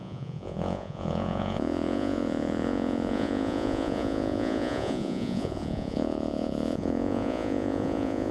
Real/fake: fake